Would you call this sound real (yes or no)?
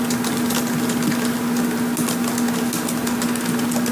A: yes